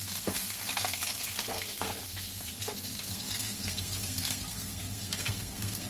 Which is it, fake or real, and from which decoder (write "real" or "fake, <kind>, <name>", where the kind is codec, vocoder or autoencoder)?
fake, codec, SNAC